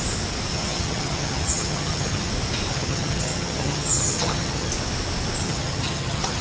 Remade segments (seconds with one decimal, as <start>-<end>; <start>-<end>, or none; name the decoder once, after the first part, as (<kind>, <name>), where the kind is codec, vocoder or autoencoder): 0.5-2.3 (vocoder, HiFi-GAN); 2.7-4.7; 5.4-6.4